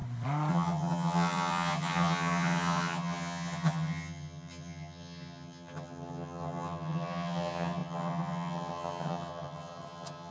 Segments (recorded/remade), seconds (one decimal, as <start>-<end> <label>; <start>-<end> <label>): 0.0-0.5 recorded; 0.5-10.3 remade